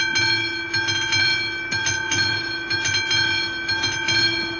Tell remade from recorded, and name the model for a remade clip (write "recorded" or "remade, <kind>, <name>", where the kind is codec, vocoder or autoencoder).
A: recorded